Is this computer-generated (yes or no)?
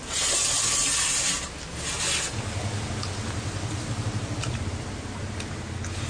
no